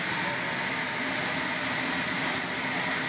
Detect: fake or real real